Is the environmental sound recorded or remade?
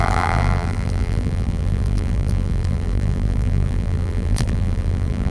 remade